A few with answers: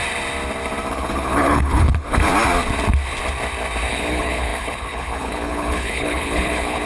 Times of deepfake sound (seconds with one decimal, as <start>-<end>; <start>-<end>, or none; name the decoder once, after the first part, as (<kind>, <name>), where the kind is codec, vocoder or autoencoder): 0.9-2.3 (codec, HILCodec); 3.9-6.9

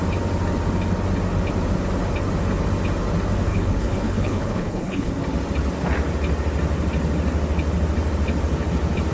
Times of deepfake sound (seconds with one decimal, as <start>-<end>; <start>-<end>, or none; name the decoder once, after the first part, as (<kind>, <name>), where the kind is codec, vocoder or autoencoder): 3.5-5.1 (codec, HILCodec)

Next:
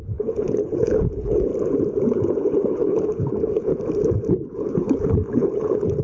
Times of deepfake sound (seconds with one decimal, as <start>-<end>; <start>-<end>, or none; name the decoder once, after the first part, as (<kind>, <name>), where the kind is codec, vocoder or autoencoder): 0.0-1.5 (codec, HILCodec); 2.0-3.7; 4.3-6.0

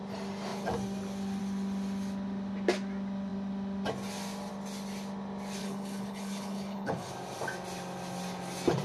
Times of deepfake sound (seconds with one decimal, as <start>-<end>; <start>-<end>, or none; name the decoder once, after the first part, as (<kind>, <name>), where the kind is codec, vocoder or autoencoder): 5.6-7.1 (codec, HILCodec)

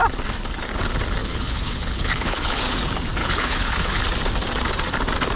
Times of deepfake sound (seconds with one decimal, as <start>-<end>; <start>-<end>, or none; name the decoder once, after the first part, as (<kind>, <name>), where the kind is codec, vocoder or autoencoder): 1.2-2.6 (codec, HILCodec); 3.2-4.0

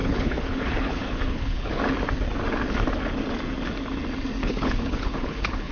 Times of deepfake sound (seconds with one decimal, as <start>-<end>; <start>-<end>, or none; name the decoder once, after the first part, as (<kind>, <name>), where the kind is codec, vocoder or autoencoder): 0.0-1.8 (codec, HILCodec); 4.4-5.7

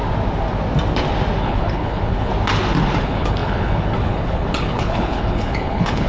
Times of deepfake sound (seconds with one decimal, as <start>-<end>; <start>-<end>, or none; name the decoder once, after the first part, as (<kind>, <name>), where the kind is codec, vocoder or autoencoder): 1.4-2.3 (codec, HILCodec); 3.0-6.1

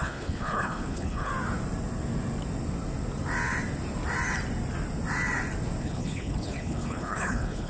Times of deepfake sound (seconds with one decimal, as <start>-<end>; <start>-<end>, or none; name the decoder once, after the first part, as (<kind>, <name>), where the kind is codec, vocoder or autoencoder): 0.0-1.3 (codec, HILCodec); 5.8-7.7